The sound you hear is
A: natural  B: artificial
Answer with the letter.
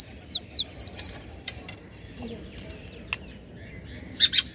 A